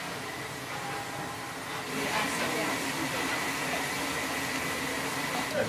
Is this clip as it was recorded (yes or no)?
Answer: yes